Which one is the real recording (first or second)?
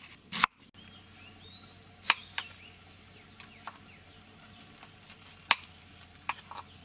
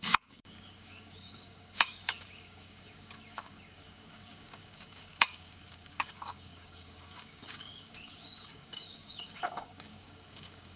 first